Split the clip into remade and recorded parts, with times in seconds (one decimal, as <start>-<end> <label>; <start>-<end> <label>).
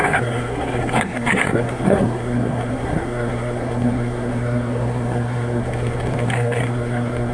0.0-7.3 remade